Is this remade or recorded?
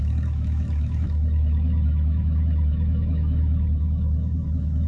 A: remade